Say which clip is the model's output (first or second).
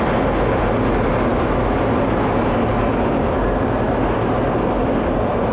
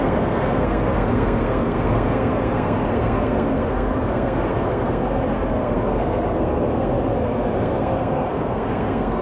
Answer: second